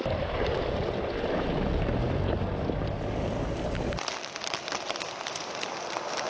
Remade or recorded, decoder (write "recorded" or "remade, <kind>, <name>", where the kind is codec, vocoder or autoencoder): recorded